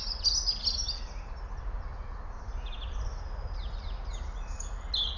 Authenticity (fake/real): real